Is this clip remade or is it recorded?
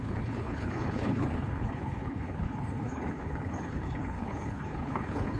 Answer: remade